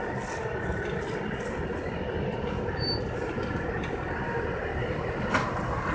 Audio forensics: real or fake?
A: real